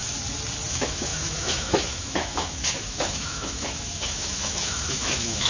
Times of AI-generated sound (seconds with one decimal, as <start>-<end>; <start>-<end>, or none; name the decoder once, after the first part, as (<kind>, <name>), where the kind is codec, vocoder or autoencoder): 0.7-5.5 (autoencoder, DAC-VAE)